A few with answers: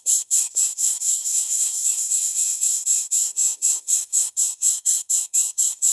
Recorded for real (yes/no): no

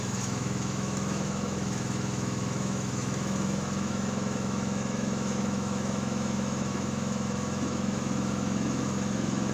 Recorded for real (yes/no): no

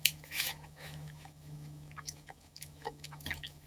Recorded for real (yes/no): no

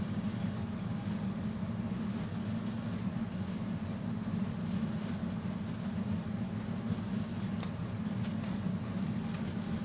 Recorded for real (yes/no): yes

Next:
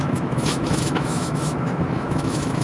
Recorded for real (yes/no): no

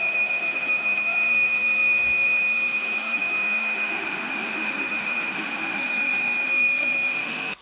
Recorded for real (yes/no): no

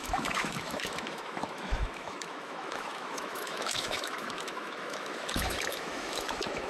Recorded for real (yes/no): no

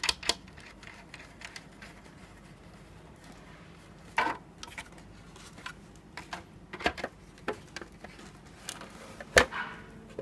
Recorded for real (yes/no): yes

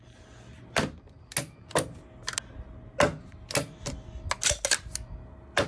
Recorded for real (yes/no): yes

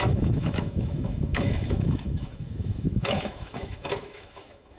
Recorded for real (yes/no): no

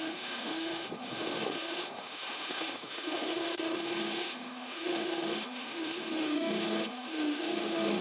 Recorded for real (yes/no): no